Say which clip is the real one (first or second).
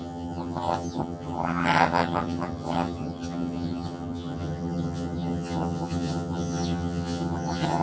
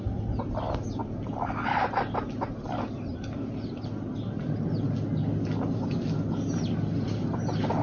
second